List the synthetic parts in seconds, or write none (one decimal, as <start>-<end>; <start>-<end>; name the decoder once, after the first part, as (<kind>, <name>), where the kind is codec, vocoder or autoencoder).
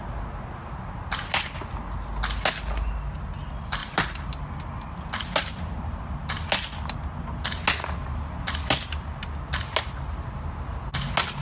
none